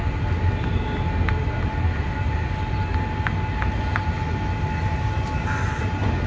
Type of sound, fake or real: real